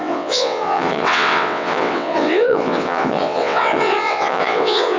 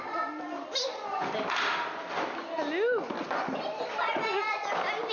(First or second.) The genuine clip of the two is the second